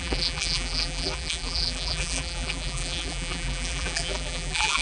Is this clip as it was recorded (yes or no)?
no